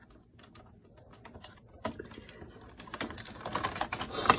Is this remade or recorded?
recorded